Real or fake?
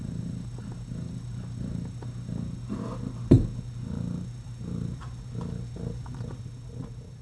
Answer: real